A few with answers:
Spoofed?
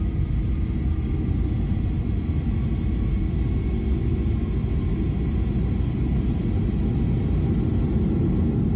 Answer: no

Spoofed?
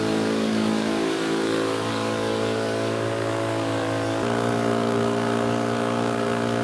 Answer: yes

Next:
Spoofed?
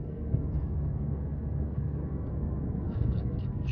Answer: yes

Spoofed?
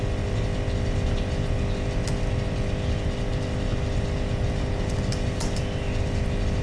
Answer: no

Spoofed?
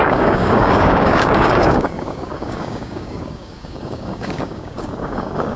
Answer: yes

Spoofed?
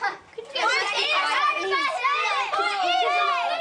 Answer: no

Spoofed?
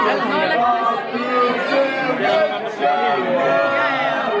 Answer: no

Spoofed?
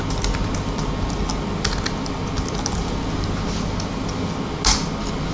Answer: no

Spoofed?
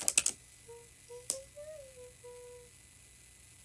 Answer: no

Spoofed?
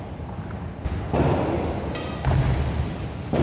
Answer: no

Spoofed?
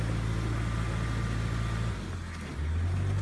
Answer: no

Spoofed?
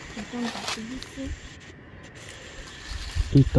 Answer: no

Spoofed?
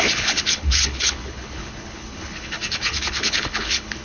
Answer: yes